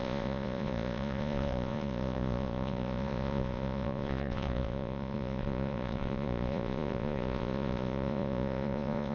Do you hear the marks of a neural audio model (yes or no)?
yes